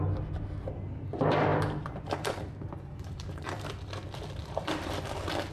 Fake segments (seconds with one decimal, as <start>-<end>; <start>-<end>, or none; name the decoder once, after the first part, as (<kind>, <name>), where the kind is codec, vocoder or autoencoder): 1.5-3.7 (vocoder, BigVGAN v2); 4.4-4.9